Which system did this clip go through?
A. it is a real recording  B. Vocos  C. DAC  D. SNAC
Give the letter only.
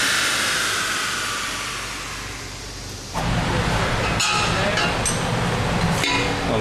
A